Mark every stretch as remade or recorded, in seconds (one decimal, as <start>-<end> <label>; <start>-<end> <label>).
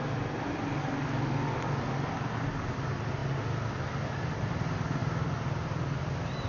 0.0-6.5 recorded